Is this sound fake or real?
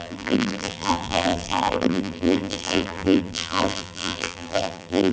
fake